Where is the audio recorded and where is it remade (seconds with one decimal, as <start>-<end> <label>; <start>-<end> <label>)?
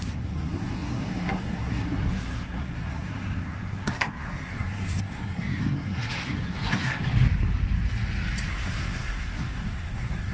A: 0.0-7.0 remade; 7.0-8.5 recorded; 8.5-10.3 remade